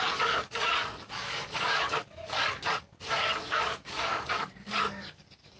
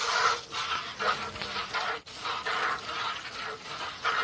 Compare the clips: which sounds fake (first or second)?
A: first